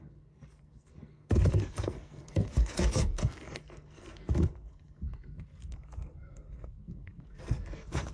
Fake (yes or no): yes